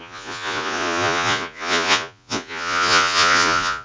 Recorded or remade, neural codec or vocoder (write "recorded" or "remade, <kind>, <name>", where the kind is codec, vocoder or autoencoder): remade, vocoder, Vocos